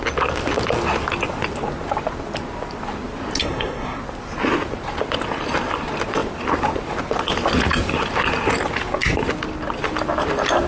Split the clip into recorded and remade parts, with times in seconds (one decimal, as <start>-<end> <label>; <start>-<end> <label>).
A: 0.0-3.4 recorded; 3.4-4.0 remade; 4.0-10.7 recorded

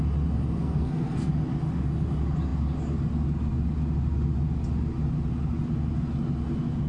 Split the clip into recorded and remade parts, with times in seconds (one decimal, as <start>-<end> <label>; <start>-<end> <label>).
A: 0.0-0.6 recorded; 0.6-1.3 remade; 1.3-6.9 recorded

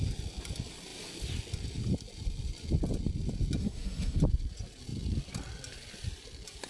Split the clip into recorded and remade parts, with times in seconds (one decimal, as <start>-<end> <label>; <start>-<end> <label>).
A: 0.0-3.6 recorded; 3.6-4.2 remade; 4.2-6.7 recorded